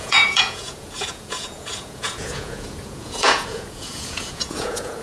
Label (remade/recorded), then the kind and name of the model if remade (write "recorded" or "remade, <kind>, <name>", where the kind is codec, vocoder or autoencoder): remade, vocoder, Vocos